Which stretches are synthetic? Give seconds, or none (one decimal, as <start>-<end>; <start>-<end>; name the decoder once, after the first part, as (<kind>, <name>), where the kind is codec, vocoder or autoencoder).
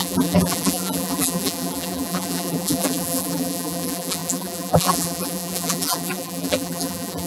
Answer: 0.0-7.3 (vocoder, BigVGAN v2)